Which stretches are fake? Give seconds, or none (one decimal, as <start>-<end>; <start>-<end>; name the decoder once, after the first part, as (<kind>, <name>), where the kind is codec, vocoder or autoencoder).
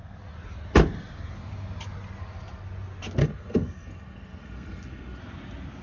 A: 3.2-5.2 (codec, SNAC)